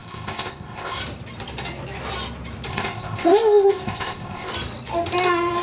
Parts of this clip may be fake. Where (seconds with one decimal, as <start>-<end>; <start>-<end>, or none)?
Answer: 0.0-1.0; 2.7-4.5